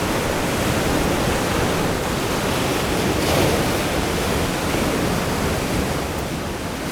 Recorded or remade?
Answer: recorded